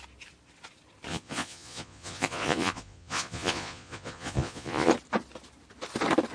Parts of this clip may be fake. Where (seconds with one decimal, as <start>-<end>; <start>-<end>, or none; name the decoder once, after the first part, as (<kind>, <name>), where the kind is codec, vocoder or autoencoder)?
1.1-4.9 (vocoder, Vocos)